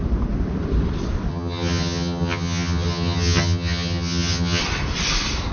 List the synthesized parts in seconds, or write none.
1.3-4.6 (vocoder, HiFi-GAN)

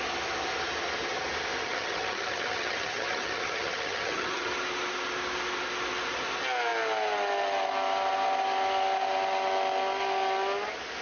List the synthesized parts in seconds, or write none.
1.6-4.5 (vocoder, HiFi-GAN)

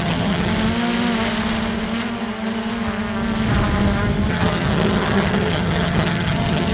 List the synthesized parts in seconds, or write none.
0.0-0.5 (vocoder, HiFi-GAN); 4.3-6.7

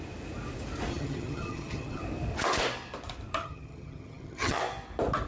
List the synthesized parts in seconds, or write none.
0.9-2.0 (vocoder, HiFi-GAN); 3.4-4.6

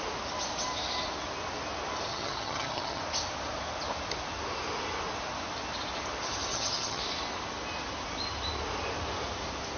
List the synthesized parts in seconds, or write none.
2.1-3.0 (vocoder, HiFi-GAN); 6.5-7.0